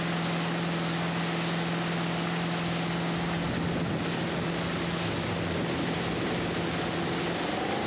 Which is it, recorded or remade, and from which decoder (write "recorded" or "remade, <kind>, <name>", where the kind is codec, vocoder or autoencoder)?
recorded